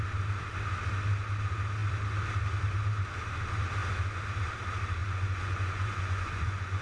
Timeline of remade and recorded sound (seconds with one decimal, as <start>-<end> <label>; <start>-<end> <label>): 0.0-5.0 recorded; 5.0-6.8 remade